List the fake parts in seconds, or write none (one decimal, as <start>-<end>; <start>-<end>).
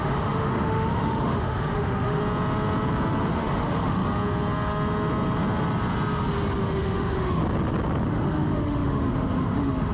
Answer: 0.0-2.2; 3.3-4.0; 6.6-7.4; 8.1-9.9